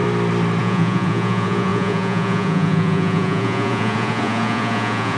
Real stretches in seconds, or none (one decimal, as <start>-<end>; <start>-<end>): 0.0-0.6